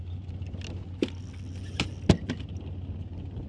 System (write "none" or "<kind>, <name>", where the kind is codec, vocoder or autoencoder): none